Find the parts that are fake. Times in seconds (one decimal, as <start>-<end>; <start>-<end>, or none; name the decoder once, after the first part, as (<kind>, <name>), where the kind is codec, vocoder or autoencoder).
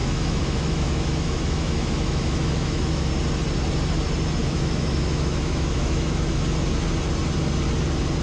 0.0-3.1 (autoencoder, DAC-VAE); 4.4-6.4